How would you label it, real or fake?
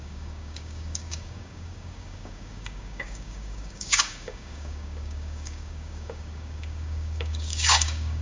fake